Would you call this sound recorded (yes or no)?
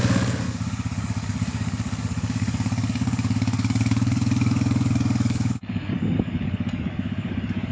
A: no